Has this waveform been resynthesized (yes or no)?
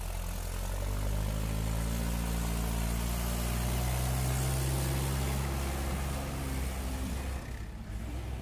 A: no